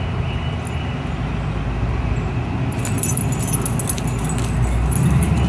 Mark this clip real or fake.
real